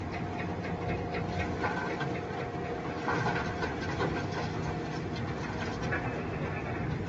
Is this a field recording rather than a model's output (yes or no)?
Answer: yes